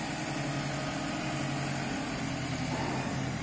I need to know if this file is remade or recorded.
recorded